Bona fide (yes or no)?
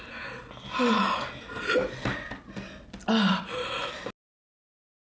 yes